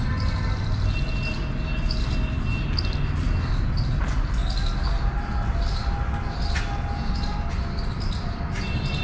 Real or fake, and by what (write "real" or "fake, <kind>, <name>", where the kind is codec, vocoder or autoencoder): real